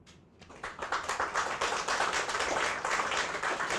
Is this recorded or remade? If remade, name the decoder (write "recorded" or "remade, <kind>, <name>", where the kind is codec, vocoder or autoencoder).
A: recorded